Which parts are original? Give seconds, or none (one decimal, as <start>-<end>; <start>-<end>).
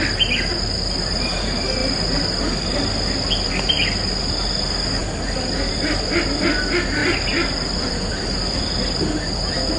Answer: 0.0-5.0; 5.7-7.0; 8.6-9.8